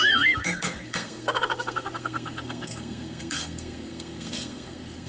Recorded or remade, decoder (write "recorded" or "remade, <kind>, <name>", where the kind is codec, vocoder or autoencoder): remade, codec, SNAC